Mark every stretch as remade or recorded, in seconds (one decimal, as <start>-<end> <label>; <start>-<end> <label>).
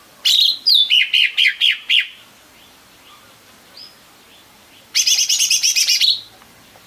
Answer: 0.0-1.2 remade; 1.2-5.3 recorded; 5.3-6.9 remade